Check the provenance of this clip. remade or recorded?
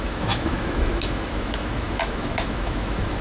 remade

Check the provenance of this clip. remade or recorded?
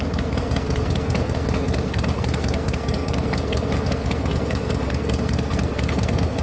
remade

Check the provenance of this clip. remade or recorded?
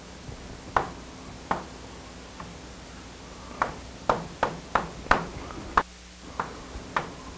recorded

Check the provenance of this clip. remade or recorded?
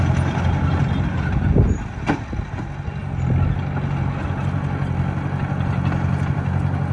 recorded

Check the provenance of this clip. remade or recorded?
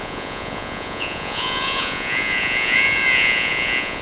remade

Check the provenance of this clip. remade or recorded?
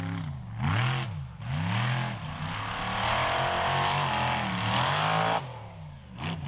recorded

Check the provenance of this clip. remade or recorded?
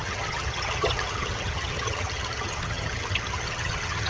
remade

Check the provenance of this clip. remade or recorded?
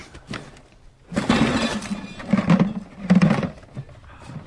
recorded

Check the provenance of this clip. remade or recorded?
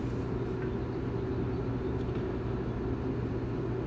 recorded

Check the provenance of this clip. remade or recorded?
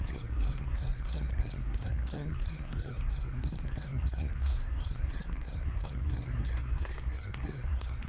remade